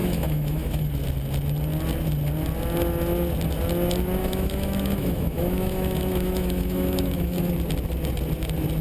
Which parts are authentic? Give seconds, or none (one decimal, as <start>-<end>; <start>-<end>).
0.9-4.2; 7.5-8.8